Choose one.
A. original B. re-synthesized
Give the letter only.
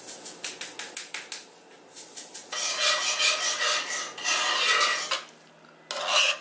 A